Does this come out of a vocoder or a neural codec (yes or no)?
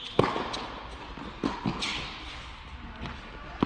no